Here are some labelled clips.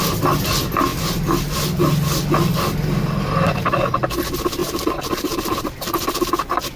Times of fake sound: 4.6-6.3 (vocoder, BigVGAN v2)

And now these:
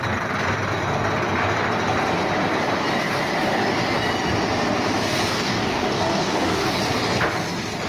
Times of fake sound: 5.3-6.8 (codec, DAC)